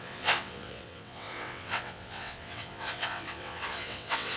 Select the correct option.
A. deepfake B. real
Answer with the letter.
A